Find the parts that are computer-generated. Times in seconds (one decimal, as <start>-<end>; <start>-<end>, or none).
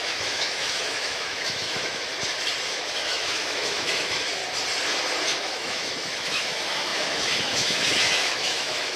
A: 0.0-2.1; 2.7-4.4; 5.4-9.0